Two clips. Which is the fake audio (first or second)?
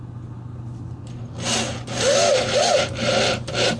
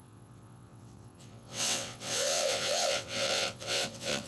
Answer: second